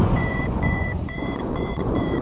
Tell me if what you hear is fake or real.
fake